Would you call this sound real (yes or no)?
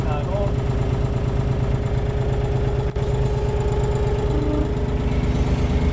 yes